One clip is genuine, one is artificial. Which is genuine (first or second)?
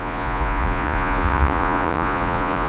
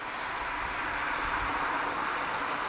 second